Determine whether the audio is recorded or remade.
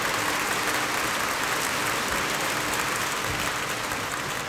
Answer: recorded